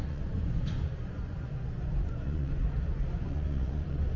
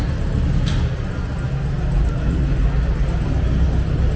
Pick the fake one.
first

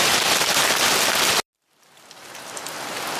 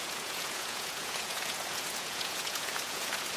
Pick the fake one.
second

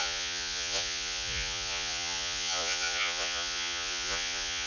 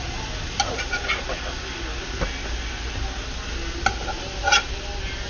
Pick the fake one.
first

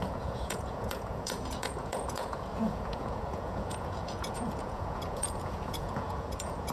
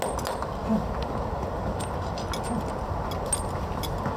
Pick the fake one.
first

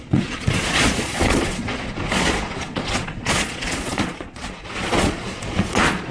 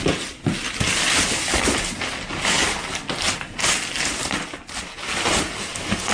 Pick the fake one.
first